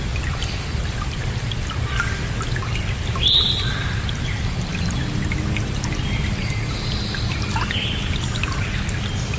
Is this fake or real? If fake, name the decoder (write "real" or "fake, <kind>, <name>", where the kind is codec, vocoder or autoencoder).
real